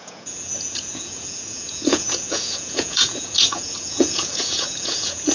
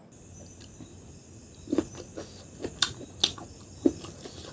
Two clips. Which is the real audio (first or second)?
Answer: second